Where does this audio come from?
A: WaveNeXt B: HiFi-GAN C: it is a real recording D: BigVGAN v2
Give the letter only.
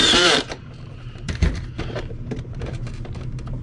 D